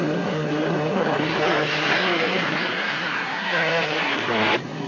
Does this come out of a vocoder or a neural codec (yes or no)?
yes